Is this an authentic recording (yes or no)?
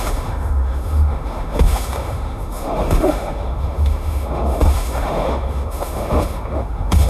no